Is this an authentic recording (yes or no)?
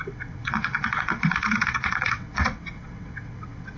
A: no